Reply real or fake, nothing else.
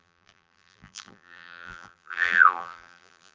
fake